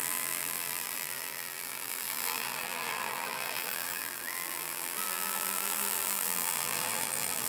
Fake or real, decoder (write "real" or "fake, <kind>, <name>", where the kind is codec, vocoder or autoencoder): fake, vocoder, BigVGAN v2